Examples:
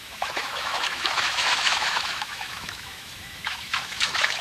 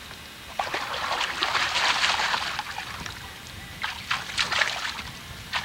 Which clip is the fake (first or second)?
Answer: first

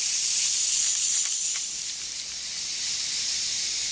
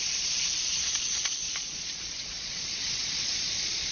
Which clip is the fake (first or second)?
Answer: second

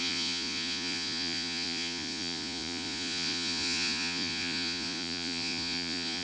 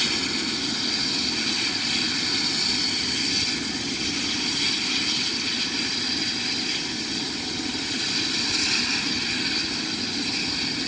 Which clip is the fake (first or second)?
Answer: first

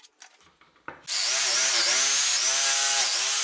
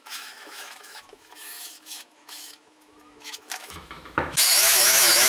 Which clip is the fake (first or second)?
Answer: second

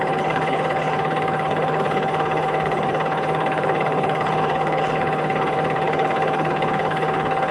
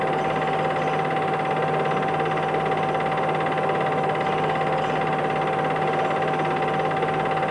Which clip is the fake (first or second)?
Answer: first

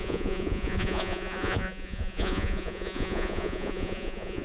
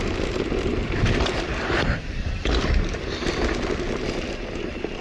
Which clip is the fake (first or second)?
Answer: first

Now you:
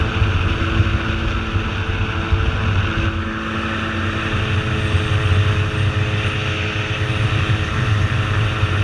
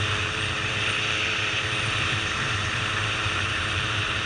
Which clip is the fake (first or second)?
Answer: second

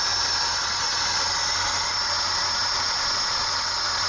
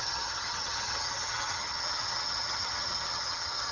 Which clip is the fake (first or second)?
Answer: second